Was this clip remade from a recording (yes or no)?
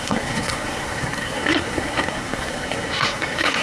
yes